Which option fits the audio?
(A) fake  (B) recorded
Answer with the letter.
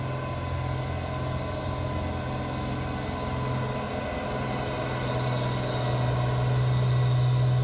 B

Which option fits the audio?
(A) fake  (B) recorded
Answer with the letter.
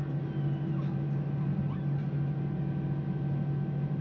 B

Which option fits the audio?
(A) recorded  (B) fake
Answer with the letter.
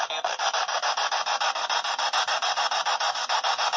A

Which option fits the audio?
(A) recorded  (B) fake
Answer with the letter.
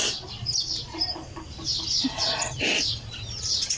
A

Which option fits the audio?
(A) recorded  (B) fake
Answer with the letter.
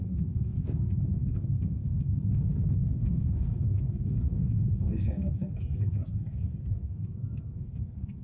B